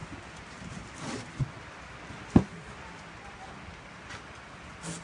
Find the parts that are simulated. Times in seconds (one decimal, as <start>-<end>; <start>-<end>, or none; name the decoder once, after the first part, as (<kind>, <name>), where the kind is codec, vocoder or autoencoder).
none

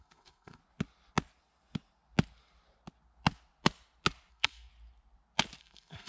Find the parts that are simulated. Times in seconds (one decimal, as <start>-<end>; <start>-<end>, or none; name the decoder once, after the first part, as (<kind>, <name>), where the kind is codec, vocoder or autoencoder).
0.0-0.6 (codec, SNAC); 4.3-4.7; 5.6-6.1

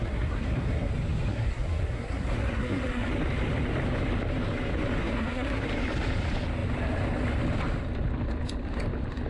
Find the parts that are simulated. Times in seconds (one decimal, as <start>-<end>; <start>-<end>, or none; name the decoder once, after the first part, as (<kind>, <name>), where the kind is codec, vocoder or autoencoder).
0.0-0.9 (codec, SNAC); 1.3-3.1; 5.0-5.7

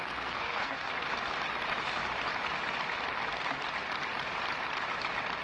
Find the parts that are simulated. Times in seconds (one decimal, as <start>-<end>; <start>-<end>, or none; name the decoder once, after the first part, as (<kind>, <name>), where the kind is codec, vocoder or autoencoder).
0.0-0.9 (codec, SNAC)

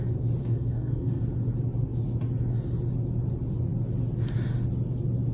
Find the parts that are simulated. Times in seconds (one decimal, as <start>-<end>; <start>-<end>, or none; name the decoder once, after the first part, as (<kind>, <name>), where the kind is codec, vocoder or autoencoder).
0.4-1.2 (codec, SNAC)